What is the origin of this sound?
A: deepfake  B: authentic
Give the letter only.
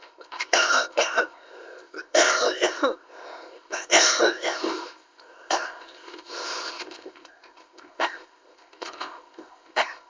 A